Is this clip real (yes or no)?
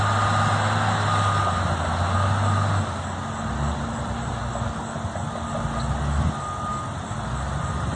yes